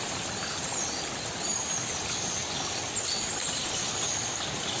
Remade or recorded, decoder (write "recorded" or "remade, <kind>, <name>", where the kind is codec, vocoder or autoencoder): recorded